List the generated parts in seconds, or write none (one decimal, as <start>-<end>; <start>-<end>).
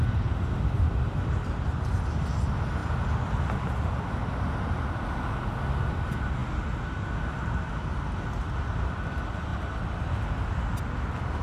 none